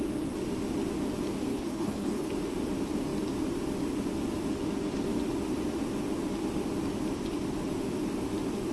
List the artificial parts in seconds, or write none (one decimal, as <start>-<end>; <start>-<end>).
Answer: 1.5-2.3